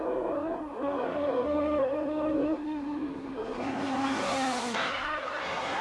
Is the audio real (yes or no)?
no